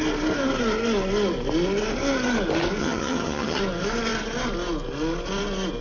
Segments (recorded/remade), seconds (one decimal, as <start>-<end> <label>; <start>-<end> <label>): 0.0-2.8 recorded; 2.8-3.6 remade; 3.6-5.8 recorded